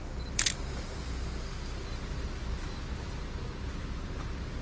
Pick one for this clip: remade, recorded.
recorded